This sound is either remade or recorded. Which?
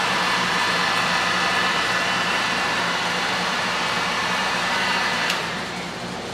remade